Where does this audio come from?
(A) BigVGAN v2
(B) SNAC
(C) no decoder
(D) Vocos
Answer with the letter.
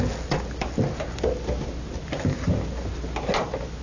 C